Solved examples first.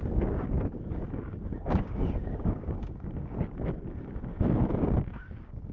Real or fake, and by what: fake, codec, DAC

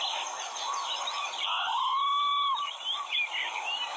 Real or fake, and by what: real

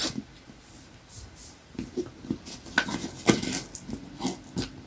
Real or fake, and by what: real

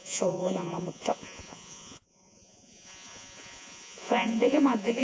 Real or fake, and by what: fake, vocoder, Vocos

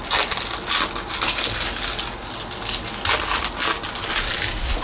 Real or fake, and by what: real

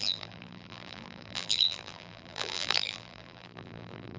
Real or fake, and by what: fake, vocoder, BigVGAN v2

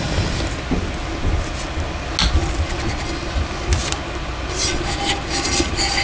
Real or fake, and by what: real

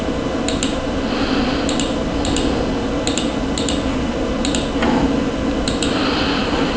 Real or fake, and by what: real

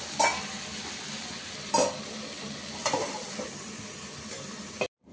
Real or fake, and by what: real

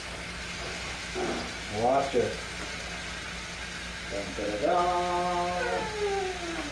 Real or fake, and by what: real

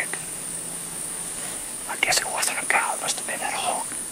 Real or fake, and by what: fake, codec, DAC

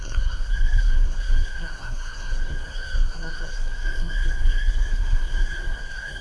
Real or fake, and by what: fake, codec, SNAC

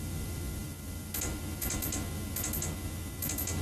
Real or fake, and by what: real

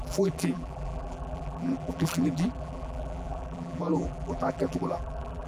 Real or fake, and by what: fake, vocoder, BigVGAN v2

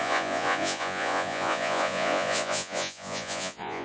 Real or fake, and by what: fake, vocoder, Vocos